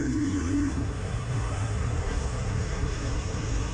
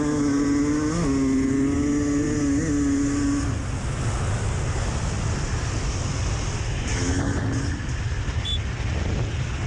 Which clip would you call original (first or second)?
second